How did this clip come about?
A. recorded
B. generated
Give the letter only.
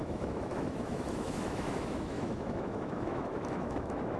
B